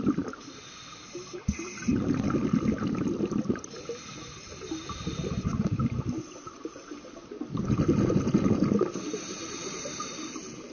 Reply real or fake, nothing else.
real